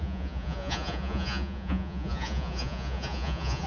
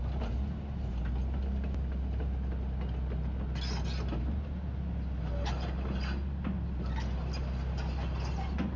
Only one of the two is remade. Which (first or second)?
first